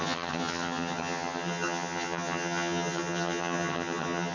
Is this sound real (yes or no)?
no